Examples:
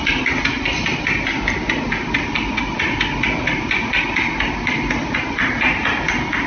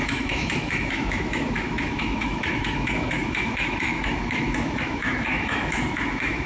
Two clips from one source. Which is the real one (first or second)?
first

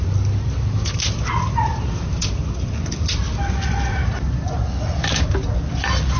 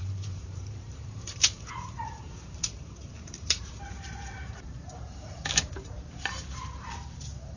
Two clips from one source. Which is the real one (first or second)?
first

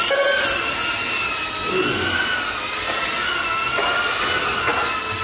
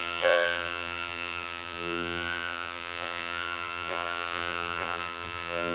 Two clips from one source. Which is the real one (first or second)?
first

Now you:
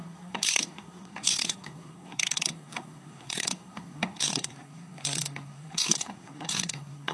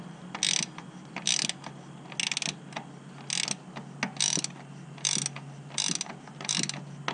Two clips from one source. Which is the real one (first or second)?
second